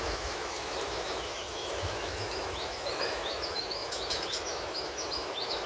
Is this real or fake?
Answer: fake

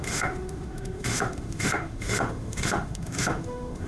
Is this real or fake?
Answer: fake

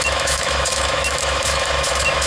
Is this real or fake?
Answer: fake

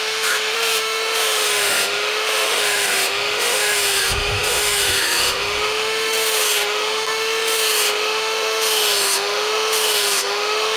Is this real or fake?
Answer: fake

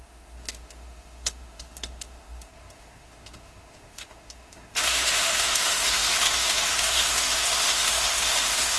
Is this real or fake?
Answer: fake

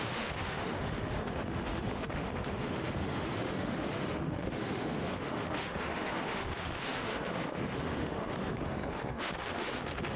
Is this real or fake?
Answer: fake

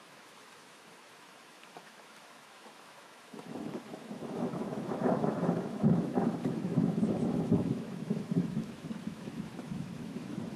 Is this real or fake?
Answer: fake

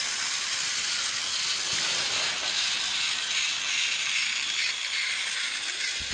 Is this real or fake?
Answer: real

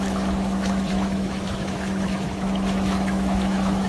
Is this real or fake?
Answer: fake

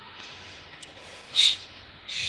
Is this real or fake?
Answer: fake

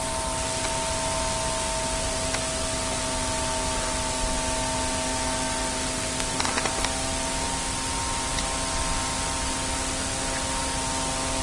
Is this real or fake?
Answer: real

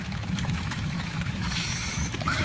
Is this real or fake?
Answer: fake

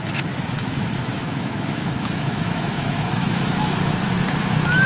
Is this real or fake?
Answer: fake